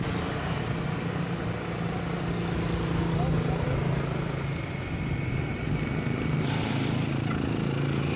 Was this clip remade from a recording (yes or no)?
no